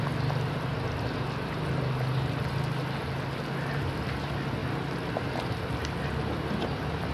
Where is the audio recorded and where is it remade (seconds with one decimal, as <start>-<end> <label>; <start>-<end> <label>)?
0.0-7.1 recorded